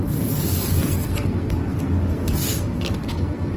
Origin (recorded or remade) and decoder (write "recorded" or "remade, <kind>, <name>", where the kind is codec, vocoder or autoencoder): remade, codec, SNAC